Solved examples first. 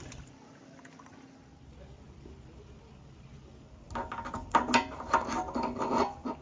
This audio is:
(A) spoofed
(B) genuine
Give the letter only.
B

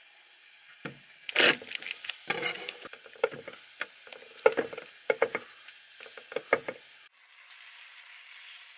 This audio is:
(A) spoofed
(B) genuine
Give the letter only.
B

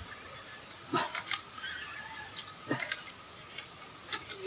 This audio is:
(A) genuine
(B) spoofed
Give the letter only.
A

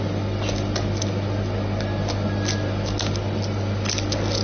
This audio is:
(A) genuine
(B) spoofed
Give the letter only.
A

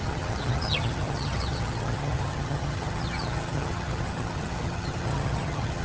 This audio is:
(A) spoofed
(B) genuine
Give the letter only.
A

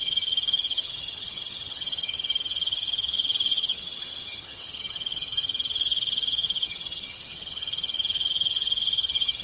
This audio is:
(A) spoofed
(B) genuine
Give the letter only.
A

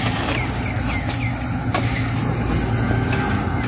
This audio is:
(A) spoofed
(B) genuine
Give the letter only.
B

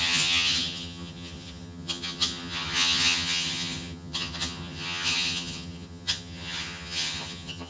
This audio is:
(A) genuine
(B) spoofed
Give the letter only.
B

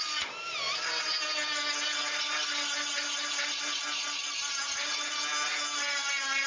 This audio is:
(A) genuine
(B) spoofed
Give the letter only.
A